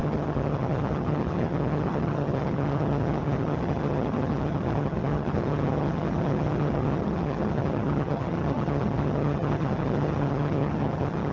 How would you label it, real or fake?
fake